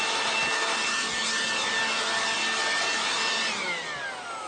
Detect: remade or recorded recorded